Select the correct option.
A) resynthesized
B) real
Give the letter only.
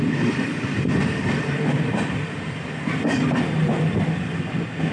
A